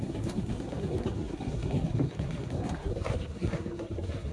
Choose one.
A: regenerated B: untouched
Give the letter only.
A